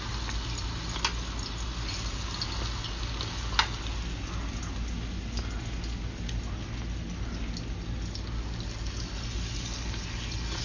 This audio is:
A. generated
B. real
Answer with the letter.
B